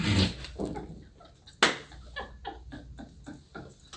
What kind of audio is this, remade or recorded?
recorded